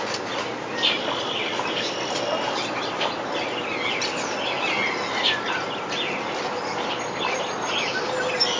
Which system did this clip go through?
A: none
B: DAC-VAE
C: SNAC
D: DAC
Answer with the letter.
A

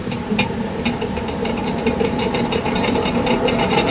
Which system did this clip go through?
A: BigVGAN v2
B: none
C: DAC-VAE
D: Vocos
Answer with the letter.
A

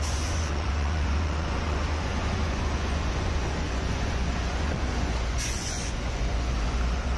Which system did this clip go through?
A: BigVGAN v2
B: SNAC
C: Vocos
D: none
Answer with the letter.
C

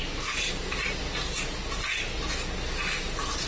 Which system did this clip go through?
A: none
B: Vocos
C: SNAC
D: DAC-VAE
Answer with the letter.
A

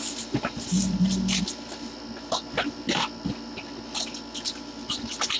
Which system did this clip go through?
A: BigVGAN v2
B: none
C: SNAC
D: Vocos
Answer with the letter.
B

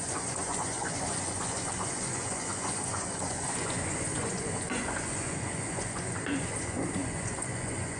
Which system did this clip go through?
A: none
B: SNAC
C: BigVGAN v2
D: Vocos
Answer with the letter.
D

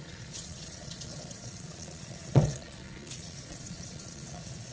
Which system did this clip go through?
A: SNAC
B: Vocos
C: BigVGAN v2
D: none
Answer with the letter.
B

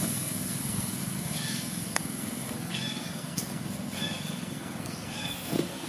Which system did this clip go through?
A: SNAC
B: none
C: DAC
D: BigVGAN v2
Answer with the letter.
A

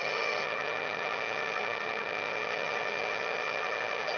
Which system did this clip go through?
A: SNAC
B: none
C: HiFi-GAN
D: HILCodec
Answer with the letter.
C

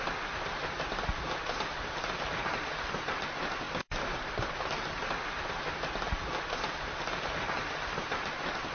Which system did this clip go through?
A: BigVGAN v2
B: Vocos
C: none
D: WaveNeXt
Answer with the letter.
C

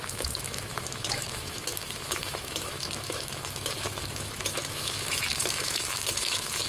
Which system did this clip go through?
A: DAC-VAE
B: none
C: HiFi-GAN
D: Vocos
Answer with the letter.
A